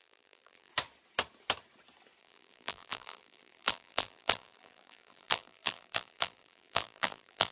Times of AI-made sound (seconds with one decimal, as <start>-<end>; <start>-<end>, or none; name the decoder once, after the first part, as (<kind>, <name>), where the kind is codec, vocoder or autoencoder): 0.0-0.7 (vocoder, BigVGAN v2); 2.2-7.5